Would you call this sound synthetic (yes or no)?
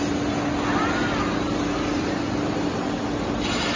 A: no